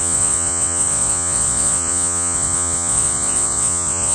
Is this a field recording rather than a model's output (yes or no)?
no